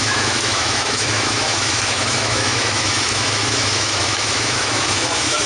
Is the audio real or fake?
fake